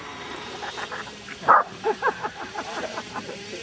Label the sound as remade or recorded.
remade